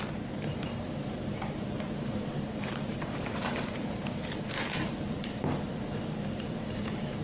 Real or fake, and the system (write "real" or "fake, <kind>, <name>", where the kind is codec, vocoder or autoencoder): fake, vocoder, BigVGAN v2